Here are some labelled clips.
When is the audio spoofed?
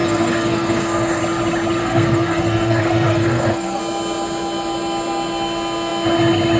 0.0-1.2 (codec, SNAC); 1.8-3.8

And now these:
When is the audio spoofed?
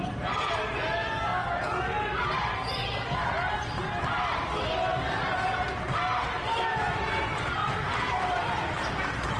7.6-8.3 (vocoder, BigVGAN v2)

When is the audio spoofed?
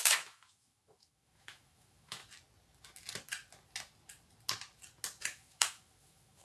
0.0-2.2 (autoencoder, DAC-VAE); 5.2-6.4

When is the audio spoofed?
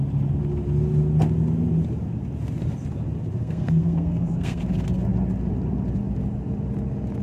3.4-4.6 (codec, SNAC)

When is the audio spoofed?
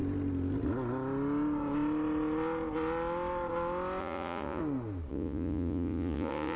4.0-4.6 (vocoder, Vocos); 5.1-6.6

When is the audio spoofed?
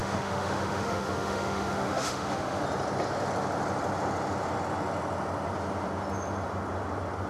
0.0-2.6 (autoencoder, DAC-VAE)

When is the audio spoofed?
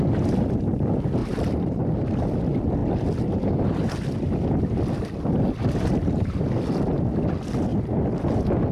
1.2-1.7 (vocoder, BigVGAN v2)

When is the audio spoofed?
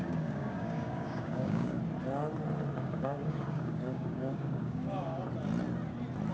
0.0-1.8 (codec, DAC); 2.8-5.2